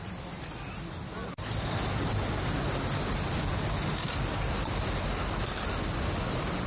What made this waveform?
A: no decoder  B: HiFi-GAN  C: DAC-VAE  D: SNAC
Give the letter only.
A